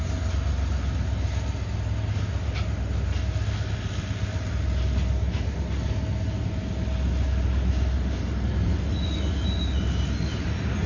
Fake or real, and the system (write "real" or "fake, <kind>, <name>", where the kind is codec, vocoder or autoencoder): real